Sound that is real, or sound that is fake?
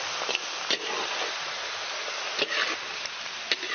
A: real